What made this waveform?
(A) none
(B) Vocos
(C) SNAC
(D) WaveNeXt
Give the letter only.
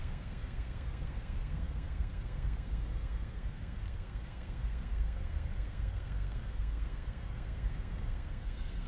C